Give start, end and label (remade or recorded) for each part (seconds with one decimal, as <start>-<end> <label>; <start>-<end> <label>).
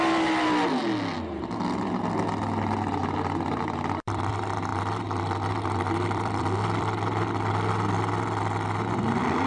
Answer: 0.0-3.0 recorded; 3.0-4.3 remade; 4.3-4.7 recorded; 4.7-7.7 remade; 7.7-9.5 recorded